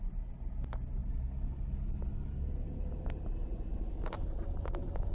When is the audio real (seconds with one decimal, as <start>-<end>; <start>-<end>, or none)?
0.0-5.1